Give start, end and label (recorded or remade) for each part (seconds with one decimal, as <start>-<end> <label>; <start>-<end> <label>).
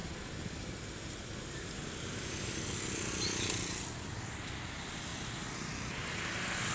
0.0-6.7 recorded